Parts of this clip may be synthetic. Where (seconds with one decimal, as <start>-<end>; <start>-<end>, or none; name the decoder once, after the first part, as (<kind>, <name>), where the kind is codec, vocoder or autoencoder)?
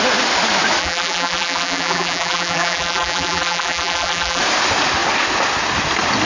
0.8-4.4 (vocoder, BigVGAN v2)